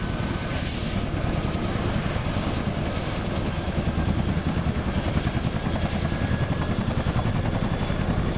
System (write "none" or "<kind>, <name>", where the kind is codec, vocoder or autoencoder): none